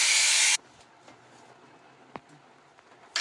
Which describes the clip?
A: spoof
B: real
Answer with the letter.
B